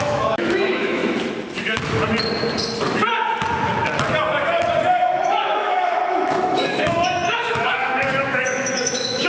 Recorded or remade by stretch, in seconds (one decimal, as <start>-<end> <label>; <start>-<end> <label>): 0.0-1.0 remade; 1.0-4.9 recorded; 4.9-9.3 remade